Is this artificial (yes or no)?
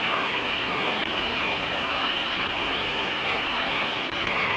yes